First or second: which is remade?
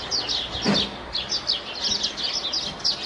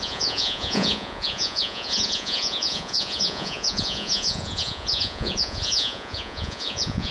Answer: second